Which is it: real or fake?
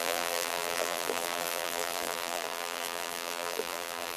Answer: fake